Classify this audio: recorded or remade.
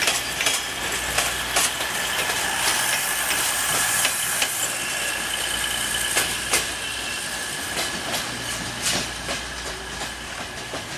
recorded